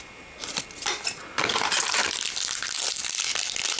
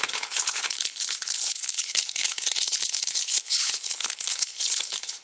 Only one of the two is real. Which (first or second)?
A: first